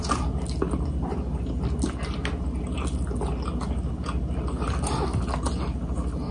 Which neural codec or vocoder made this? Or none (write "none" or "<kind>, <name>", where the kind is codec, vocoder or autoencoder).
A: none